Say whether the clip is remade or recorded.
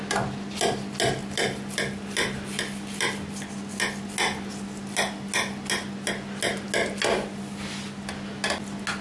recorded